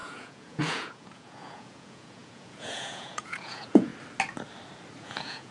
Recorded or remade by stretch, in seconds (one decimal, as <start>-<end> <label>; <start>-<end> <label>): 0.0-3.9 remade; 3.9-5.0 recorded; 5.0-5.5 remade